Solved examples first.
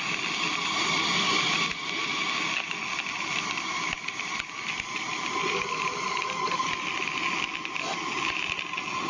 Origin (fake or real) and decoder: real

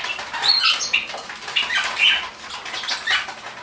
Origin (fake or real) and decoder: real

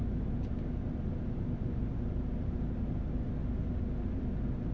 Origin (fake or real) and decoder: real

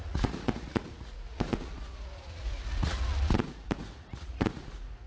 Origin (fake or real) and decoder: fake, vocoder, Vocos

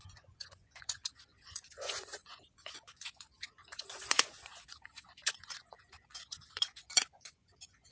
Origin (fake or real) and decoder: fake, vocoder, Vocos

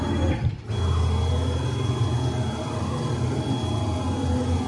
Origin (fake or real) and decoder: real